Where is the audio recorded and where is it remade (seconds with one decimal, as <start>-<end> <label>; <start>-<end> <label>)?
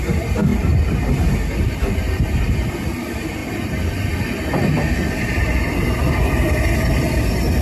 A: 0.0-7.6 recorded